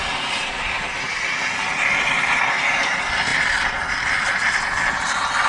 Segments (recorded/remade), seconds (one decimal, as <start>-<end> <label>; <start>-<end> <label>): 0.0-5.5 recorded